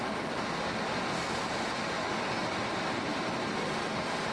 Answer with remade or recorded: recorded